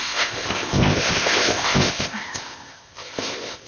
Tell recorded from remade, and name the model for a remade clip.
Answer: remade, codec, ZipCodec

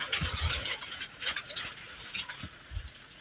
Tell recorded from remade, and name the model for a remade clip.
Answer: remade, vocoder, Vocos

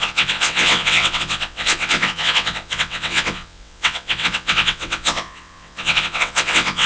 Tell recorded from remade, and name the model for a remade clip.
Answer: remade, vocoder, WaveNeXt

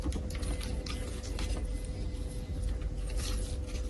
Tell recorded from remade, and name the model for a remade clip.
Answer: recorded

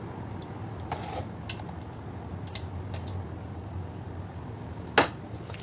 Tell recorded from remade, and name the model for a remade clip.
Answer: recorded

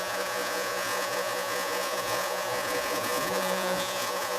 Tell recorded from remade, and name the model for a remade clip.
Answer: remade, vocoder, Vocos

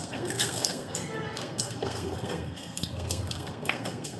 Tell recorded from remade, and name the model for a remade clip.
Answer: remade, codec, SNAC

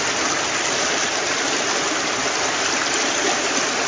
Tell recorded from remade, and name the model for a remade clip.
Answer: recorded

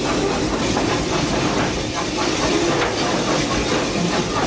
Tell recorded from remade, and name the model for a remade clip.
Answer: recorded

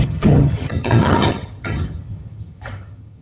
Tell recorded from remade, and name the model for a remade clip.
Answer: remade, vocoder, HiFi-GAN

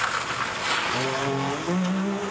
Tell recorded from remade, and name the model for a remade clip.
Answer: recorded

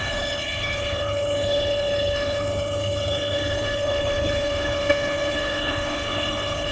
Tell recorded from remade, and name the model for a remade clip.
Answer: remade, codec, HILCodec